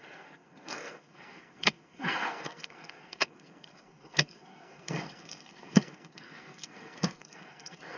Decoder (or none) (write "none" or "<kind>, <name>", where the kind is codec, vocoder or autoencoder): codec, SNAC